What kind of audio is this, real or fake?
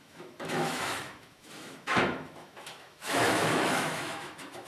fake